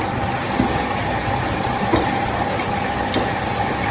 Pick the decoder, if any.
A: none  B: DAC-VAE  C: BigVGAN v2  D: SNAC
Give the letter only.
A